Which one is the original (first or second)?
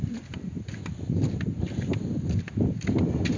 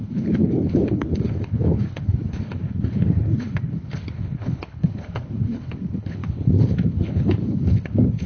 first